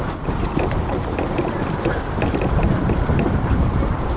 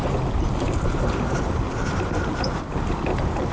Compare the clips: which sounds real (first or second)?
second